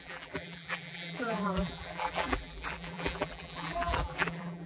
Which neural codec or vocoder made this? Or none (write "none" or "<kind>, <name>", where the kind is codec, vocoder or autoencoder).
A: vocoder, BigVGAN v2